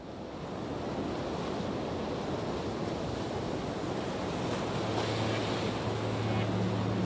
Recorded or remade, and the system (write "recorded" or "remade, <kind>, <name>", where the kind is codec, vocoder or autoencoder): recorded